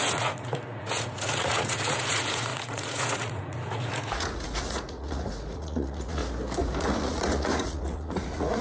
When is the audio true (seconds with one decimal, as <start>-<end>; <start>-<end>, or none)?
6.2-6.8